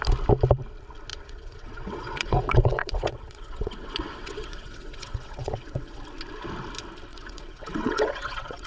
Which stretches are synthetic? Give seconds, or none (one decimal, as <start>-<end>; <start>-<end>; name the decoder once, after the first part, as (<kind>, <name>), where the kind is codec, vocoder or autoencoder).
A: 1.1-6.0 (vocoder, WaveNeXt); 7.1-8.7